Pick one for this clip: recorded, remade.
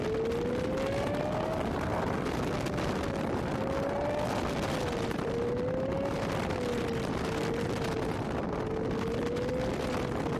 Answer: recorded